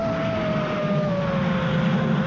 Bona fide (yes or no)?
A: yes